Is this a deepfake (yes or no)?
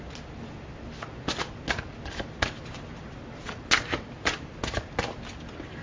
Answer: no